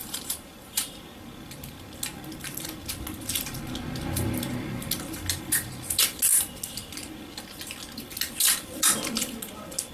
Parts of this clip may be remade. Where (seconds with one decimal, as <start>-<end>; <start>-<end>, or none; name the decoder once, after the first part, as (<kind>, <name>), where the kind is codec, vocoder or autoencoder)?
0.0-1.0 (vocoder, BigVGAN v2)

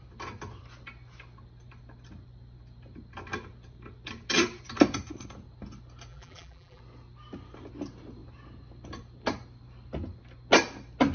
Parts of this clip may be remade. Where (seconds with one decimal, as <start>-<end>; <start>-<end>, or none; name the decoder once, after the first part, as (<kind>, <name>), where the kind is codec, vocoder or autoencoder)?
6.1-6.8 (vocoder, BigVGAN v2)

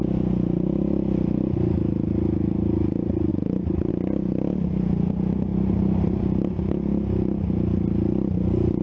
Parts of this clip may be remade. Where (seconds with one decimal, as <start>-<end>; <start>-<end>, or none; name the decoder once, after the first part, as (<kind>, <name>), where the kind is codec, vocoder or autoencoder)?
5.5-6.2 (vocoder, BigVGAN v2)

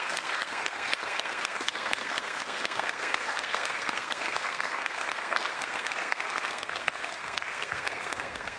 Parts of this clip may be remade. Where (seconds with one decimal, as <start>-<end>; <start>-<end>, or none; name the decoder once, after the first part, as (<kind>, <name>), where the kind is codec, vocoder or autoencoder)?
0.0-8.6 (codec, SNAC)

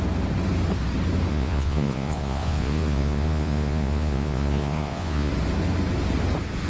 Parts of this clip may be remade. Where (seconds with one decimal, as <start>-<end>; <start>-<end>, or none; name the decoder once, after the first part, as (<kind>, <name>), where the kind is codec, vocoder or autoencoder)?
1.3-5.3 (vocoder, Vocos)